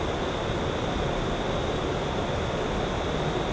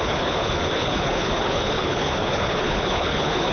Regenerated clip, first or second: second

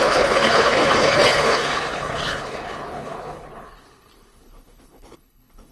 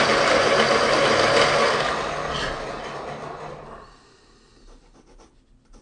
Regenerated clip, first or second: first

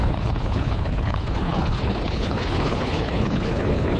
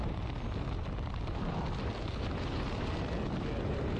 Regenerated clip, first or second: first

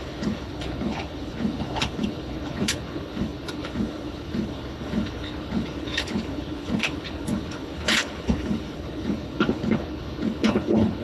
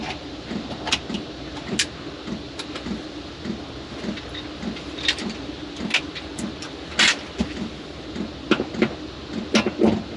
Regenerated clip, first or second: first